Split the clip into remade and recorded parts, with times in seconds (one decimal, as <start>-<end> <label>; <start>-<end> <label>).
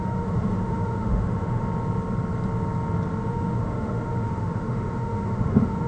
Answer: 0.0-1.6 remade; 1.6-3.3 recorded; 3.3-5.9 remade